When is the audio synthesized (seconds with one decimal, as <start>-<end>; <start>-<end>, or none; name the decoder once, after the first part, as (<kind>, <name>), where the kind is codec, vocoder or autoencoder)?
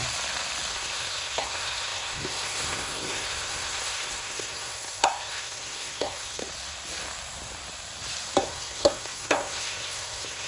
0.7-6.4 (codec, SNAC); 8.4-10.5